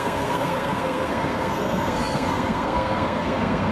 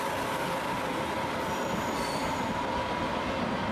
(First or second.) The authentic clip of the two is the second